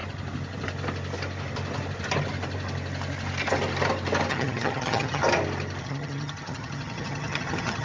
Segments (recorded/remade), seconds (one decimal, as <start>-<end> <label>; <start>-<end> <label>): 0.0-4.3 recorded; 4.3-5.2 remade; 5.2-5.8 recorded; 5.8-7.8 remade